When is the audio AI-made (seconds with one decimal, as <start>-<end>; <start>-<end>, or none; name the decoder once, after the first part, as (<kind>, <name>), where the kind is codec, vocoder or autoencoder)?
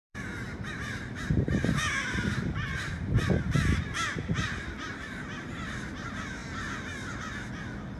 0.0-3.5 (vocoder, BigVGAN v2)